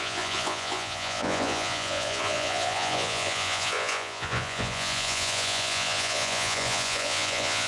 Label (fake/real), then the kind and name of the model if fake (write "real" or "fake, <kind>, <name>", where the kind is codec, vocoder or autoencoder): fake, vocoder, Vocos